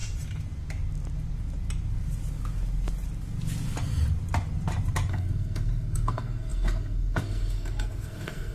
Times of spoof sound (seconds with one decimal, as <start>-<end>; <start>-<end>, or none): 5.1-8.5